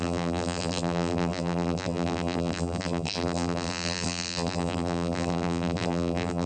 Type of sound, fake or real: fake